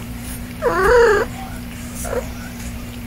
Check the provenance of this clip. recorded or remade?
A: remade